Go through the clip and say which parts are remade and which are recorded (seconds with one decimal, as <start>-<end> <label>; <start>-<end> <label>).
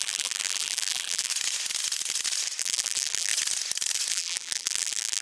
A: 0.0-1.3 remade; 1.3-2.6 recorded; 2.6-3.3 remade; 3.3-4.1 recorded; 4.1-5.2 remade